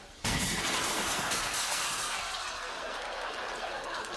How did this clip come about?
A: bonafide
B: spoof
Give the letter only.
B